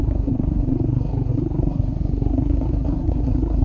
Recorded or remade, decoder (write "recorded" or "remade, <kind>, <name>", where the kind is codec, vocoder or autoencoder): remade, codec, SNAC